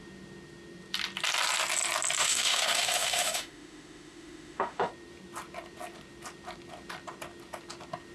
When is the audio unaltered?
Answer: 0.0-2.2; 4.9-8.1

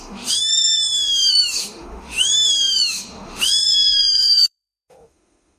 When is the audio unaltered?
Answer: none